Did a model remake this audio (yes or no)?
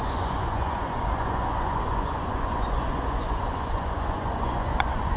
yes